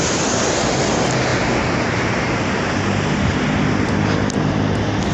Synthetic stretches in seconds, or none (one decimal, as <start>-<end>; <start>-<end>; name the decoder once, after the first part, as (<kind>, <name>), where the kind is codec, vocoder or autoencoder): none